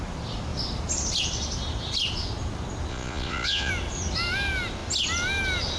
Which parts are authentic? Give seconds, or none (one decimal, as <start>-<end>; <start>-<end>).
0.0-2.9; 3.7-5.8